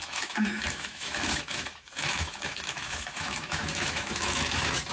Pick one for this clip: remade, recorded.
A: remade